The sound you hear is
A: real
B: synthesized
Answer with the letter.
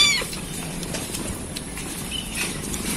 B